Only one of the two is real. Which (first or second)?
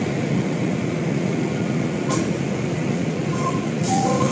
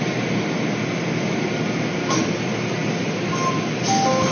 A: second